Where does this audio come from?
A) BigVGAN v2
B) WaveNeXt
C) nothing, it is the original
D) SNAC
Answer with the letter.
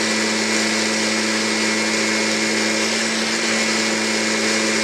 C